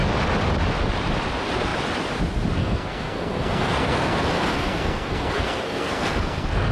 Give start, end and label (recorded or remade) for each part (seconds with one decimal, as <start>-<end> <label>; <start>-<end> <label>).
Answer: 0.0-2.6 recorded; 2.6-6.7 remade